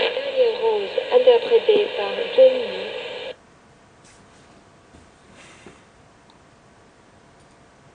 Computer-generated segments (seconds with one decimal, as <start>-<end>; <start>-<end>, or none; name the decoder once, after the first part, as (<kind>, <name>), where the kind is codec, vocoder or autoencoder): none